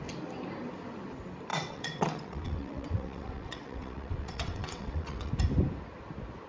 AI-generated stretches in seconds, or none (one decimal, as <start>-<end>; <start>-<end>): 1.5-5.3